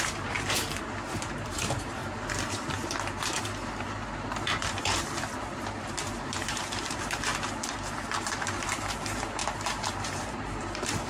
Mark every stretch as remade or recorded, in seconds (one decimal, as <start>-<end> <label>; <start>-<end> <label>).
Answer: 0.0-2.0 remade; 2.0-5.8 recorded; 5.8-7.3 remade; 7.3-8.1 recorded; 8.1-11.1 remade